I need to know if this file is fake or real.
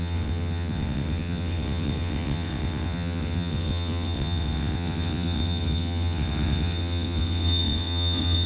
fake